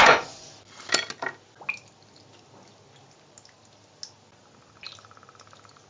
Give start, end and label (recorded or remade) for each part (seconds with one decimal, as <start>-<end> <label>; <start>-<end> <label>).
0.0-0.5 remade; 0.5-5.9 recorded